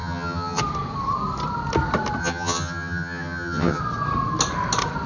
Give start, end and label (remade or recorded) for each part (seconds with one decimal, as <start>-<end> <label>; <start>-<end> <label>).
0.0-0.6 remade; 0.6-2.2 recorded; 2.2-3.8 remade; 3.8-5.1 recorded

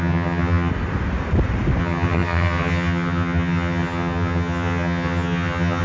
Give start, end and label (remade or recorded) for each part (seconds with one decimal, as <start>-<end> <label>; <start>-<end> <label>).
0.0-0.7 remade; 0.7-1.8 recorded; 1.8-5.8 remade

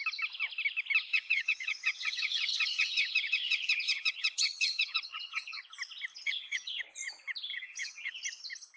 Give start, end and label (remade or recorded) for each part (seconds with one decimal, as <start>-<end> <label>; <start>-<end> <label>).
0.0-1.1 recorded; 1.1-5.6 remade; 5.6-6.1 recorded; 6.1-6.8 remade; 6.8-7.5 recorded; 7.5-8.2 remade; 8.2-8.8 recorded

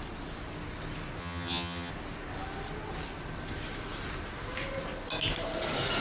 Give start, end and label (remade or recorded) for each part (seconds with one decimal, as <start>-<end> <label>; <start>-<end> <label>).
0.0-1.2 recorded; 1.2-1.9 remade; 1.9-6.0 recorded

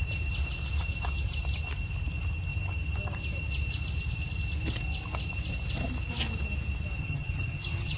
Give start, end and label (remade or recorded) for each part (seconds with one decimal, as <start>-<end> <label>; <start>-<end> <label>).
0.0-7.0 recorded; 7.0-8.0 remade